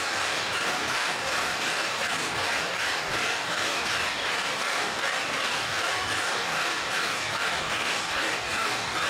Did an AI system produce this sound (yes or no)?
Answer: yes